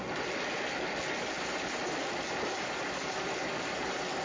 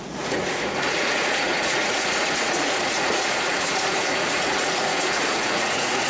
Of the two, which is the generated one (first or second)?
second